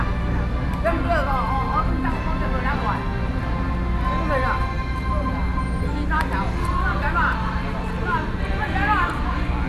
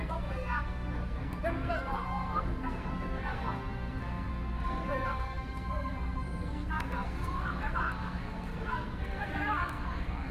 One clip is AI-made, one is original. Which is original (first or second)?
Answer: first